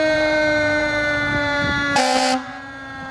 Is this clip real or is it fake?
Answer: fake